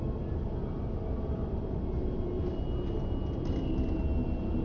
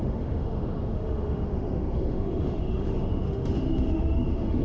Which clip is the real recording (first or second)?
first